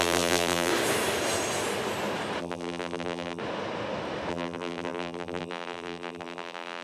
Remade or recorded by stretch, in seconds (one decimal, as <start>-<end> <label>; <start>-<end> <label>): 0.0-0.7 remade; 0.7-2.4 recorded; 2.4-3.4 remade; 3.4-4.3 recorded; 4.3-6.8 remade